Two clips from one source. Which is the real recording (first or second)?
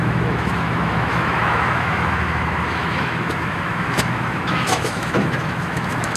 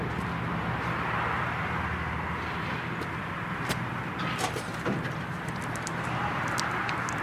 second